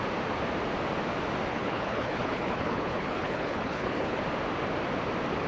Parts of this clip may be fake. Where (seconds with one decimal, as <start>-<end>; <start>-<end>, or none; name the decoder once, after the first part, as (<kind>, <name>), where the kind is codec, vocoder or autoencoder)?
1.5-4.2 (codec, HILCodec)